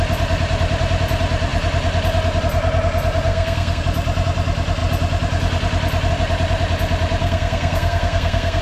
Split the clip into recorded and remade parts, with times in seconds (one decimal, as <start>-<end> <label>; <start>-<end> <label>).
0.0-3.3 recorded; 3.3-3.8 remade; 3.8-7.2 recorded; 7.2-8.6 remade